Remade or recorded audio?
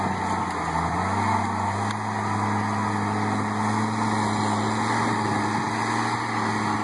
recorded